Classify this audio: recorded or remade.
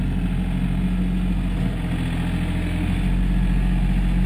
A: recorded